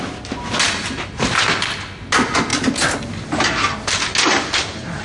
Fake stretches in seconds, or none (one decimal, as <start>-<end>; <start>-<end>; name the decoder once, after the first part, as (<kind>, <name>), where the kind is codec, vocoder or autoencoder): none